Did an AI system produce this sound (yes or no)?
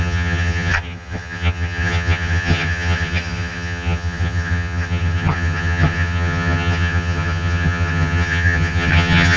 yes